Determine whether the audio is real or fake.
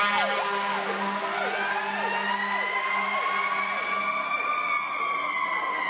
real